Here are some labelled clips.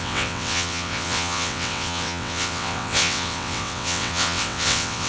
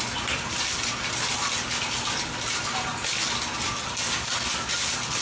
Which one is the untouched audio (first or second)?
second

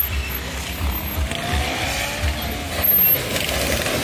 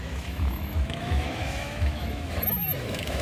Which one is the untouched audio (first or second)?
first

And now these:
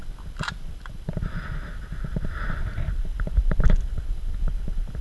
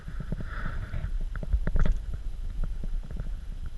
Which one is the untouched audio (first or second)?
first